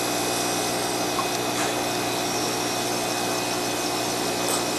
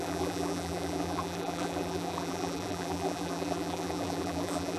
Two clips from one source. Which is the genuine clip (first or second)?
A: first